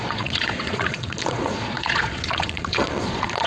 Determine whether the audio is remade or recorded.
remade